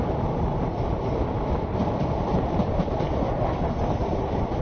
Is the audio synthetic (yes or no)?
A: no